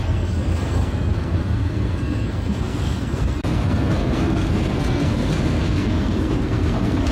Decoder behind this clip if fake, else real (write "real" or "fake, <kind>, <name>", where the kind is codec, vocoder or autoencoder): fake, codec, SNAC